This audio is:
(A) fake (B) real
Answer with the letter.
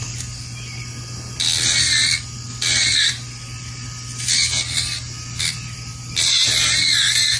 B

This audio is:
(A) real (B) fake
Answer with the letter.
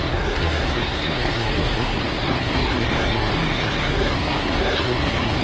B